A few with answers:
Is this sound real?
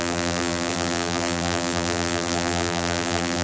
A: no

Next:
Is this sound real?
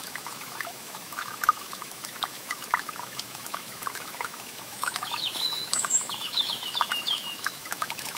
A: no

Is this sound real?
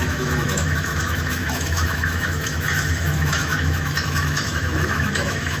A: no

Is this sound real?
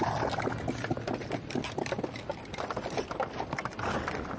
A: yes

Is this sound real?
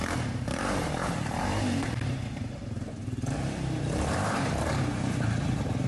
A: no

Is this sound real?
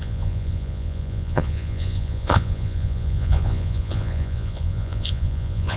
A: no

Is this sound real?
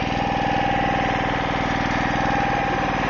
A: yes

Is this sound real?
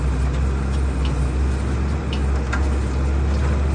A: yes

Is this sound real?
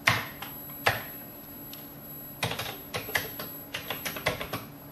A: yes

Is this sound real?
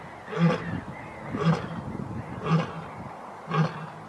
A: yes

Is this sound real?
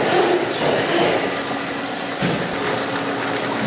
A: yes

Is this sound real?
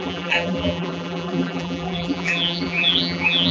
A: no